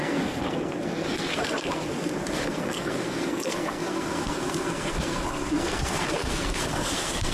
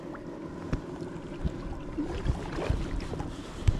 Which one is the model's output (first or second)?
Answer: first